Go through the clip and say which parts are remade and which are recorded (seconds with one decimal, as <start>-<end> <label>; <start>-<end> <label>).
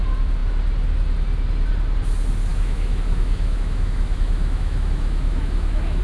0.0-2.5 recorded; 2.5-6.0 remade